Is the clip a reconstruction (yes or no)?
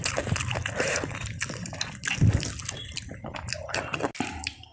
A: no